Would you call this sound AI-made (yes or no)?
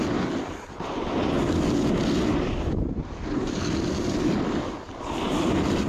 no